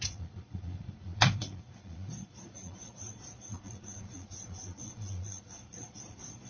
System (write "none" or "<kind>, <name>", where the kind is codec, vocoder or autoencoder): vocoder, Vocos